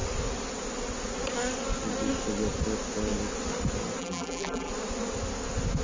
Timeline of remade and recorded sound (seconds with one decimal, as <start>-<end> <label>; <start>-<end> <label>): 0.0-4.0 recorded; 4.0-4.7 remade; 4.7-5.8 recorded